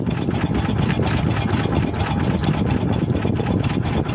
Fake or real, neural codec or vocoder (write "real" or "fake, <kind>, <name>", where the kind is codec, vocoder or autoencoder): real